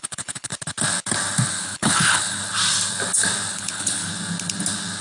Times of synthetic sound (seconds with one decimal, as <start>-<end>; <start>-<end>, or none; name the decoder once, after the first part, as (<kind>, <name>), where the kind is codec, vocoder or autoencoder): 0.0-0.5 (codec, HILCodec); 1.5-2.4; 3.5-4.1